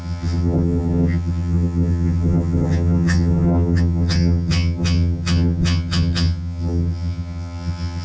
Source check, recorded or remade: remade